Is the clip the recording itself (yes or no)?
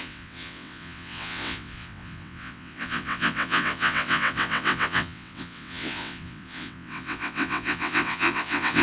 no